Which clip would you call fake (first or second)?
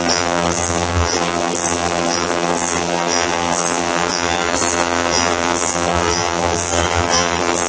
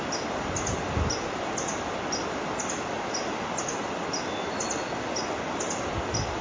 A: first